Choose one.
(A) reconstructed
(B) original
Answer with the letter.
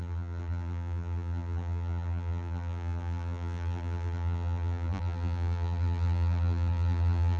A